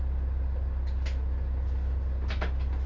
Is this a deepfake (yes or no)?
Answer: no